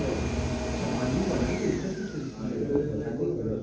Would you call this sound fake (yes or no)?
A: no